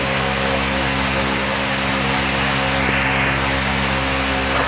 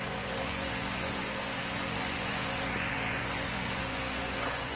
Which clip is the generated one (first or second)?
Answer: second